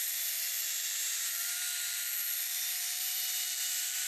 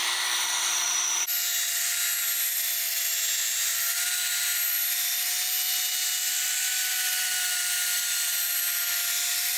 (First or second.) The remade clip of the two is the first